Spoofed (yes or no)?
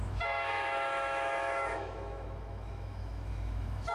yes